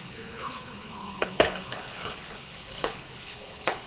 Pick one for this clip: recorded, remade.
remade